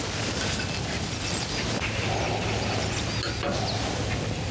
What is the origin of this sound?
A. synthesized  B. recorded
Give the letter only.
B